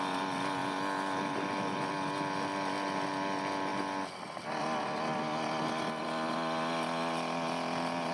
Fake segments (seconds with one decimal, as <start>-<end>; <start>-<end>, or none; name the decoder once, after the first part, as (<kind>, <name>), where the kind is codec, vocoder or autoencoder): none